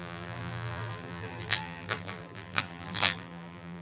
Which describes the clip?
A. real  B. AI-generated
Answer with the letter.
B